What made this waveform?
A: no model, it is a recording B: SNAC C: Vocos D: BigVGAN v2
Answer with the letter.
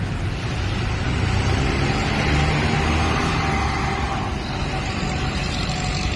A